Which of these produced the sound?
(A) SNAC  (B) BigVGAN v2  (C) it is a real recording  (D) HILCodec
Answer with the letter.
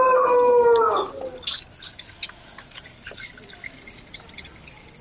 C